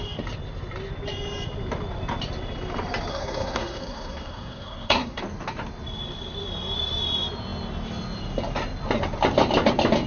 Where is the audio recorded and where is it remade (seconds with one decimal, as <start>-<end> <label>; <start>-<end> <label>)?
0.0-3.1 recorded; 3.1-5.2 remade; 5.2-10.1 recorded